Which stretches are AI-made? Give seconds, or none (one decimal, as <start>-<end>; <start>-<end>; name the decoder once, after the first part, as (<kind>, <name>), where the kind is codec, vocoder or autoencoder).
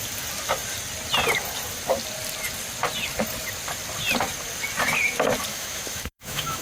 5.5-6.6 (autoencoder, DAC-VAE)